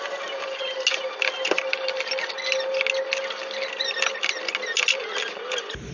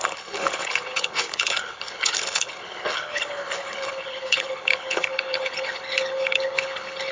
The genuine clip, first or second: first